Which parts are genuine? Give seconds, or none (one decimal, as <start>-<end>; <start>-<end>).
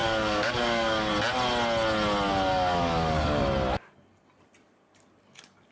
1.1-2.5; 3.4-5.7